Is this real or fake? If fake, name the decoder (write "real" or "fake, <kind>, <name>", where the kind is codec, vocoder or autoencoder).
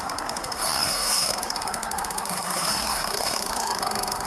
fake, codec, SNAC